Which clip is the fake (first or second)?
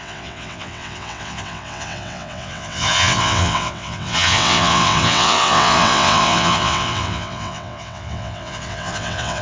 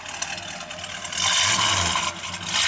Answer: first